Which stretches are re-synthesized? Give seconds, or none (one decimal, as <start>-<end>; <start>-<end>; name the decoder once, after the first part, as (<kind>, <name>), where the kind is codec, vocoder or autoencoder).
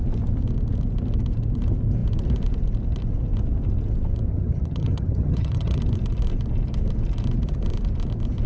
4.3-5.8 (vocoder, HiFi-GAN)